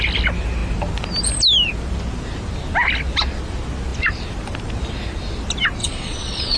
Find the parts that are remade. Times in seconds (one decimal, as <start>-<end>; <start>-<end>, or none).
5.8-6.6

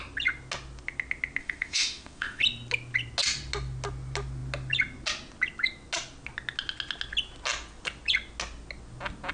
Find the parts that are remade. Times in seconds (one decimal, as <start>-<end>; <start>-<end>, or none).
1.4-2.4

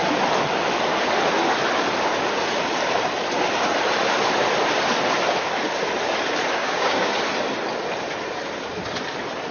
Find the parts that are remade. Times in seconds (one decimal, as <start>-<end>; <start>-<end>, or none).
6.6-7.1